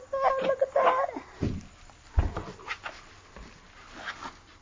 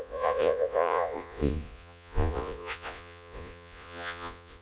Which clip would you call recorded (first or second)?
first